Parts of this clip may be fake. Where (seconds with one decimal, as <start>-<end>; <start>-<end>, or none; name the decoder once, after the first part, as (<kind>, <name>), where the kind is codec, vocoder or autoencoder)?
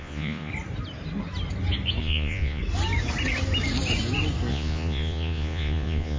0.0-0.5 (vocoder, Vocos); 2.0-2.6; 4.5-6.2